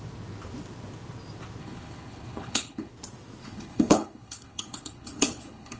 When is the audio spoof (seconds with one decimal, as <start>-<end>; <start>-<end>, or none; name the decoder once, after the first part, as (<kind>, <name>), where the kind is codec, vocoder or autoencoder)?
1.6-2.9 (codec, HILCodec); 3.4-5.8